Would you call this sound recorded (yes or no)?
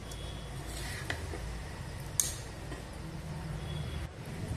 yes